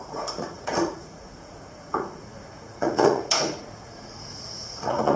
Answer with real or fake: fake